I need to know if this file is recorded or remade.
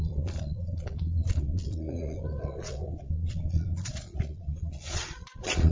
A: remade